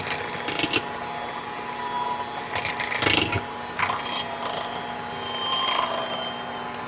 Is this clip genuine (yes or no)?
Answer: yes